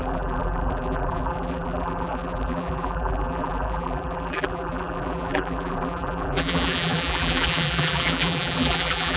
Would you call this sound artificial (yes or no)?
yes